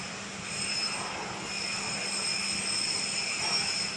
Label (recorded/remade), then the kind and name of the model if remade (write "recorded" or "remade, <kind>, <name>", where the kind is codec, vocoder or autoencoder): recorded